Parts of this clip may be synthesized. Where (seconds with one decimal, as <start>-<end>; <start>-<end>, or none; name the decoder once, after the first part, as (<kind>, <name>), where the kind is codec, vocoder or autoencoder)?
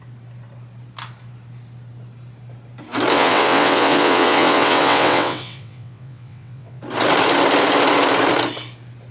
3.1-6.8 (vocoder, WaveNeXt)